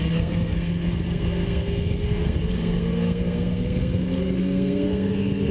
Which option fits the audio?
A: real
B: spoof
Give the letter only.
B